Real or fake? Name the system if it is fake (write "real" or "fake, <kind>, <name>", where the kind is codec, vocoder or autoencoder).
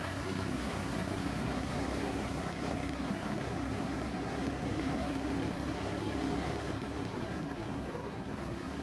fake, codec, SNAC